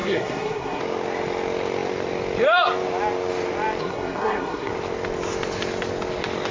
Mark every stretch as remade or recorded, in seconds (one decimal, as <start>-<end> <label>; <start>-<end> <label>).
0.0-0.8 remade; 0.8-3.8 recorded; 3.8-4.7 remade; 4.7-6.5 recorded